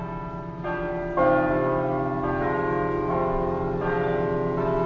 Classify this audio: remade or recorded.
recorded